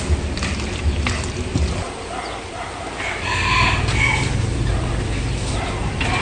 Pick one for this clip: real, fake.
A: real